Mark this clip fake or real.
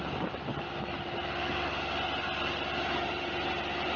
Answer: real